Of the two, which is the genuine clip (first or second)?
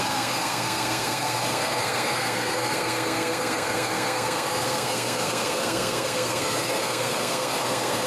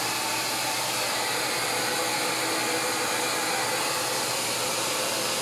second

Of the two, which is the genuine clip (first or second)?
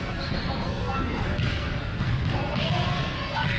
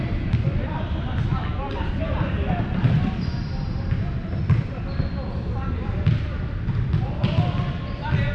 second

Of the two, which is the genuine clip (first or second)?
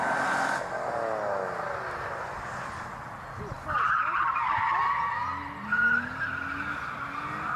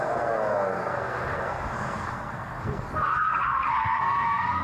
first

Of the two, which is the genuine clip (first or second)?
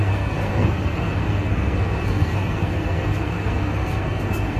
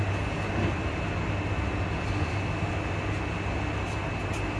second